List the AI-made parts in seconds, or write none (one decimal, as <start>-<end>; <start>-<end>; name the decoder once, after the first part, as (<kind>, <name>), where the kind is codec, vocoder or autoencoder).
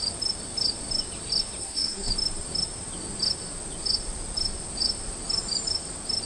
1.6-2.1 (codec, SNAC)